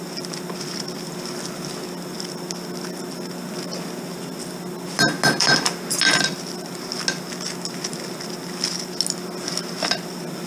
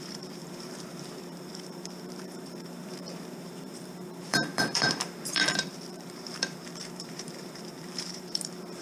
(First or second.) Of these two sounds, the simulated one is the second